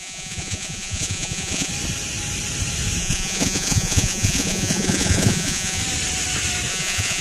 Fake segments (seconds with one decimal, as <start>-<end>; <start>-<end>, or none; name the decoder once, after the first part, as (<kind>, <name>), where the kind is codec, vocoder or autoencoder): 0.0-1.7 (vocoder, Vocos); 3.0-5.8; 6.7-7.2